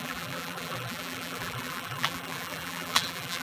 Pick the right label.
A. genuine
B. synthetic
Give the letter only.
B